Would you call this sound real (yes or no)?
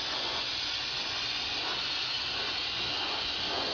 no